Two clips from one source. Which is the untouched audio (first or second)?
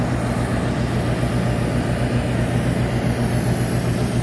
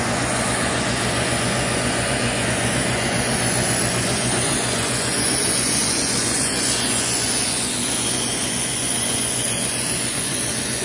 first